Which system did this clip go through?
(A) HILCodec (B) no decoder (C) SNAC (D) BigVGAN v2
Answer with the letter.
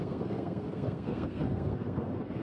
C